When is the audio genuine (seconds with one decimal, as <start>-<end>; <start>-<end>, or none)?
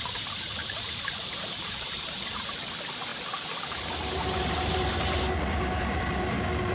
0.0-0.6; 2.7-6.7